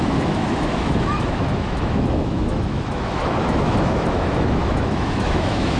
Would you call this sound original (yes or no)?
no